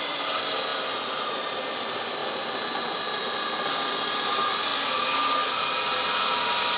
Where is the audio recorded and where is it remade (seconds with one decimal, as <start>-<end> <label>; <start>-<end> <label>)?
0.0-6.8 recorded